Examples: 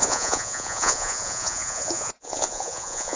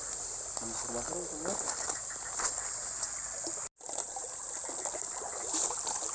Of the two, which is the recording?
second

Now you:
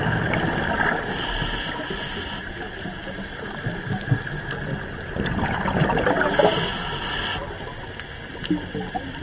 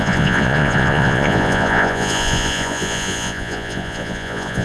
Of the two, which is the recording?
first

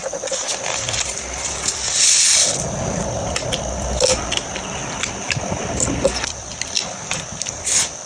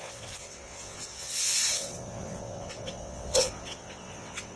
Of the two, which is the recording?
first